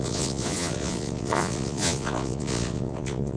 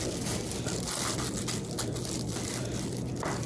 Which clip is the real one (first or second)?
second